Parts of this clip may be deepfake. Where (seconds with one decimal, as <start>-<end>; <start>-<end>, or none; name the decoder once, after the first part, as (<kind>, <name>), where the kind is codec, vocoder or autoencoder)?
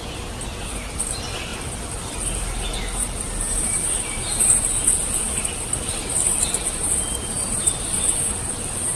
none